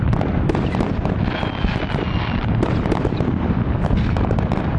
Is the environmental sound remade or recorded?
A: recorded